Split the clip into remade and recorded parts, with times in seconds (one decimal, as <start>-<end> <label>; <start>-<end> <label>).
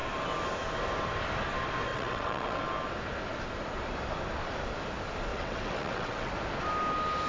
0.0-1.9 recorded; 1.9-2.6 remade; 2.6-5.3 recorded; 5.3-6.3 remade; 6.3-7.3 recorded